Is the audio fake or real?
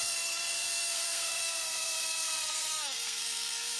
fake